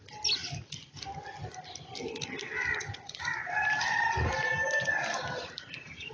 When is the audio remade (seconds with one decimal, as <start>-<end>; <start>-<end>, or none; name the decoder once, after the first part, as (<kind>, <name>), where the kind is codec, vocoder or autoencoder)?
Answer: none